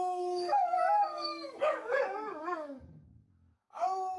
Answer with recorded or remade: remade